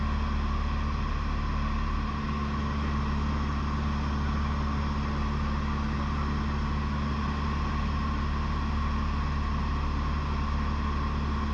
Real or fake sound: real